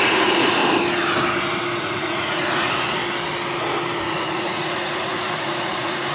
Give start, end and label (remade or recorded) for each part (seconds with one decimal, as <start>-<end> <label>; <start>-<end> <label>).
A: 0.0-0.6 remade; 0.6-1.8 recorded; 1.8-3.0 remade; 3.0-4.0 recorded; 4.0-6.1 remade

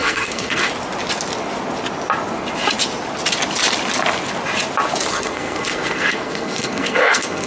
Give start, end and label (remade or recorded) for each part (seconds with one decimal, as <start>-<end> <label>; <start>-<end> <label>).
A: 0.0-0.7 remade; 0.7-5.1 recorded; 5.1-7.5 remade

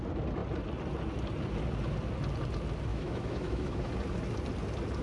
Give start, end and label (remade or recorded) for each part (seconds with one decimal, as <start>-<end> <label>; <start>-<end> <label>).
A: 0.0-2.9 recorded; 2.9-3.9 remade; 3.9-5.0 recorded

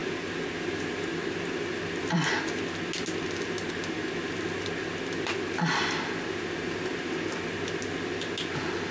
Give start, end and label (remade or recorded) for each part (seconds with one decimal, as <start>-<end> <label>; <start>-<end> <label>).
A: 0.0-8.9 recorded

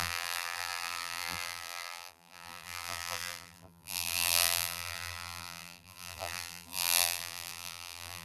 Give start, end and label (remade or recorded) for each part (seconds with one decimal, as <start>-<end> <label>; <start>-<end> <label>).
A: 0.0-8.2 remade

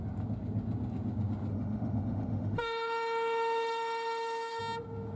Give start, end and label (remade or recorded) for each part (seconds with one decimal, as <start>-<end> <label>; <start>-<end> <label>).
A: 0.0-1.5 recorded; 1.5-4.6 remade; 4.6-5.2 recorded

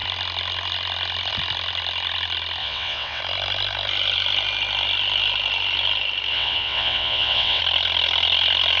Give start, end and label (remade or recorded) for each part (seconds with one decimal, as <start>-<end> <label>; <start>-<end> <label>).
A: 0.0-2.6 recorded; 2.6-3.2 remade; 3.2-6.3 recorded; 6.3-7.6 remade; 7.6-8.8 recorded

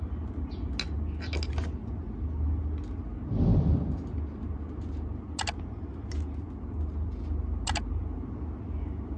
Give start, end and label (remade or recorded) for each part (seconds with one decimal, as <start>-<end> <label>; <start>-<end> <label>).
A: 0.0-9.2 recorded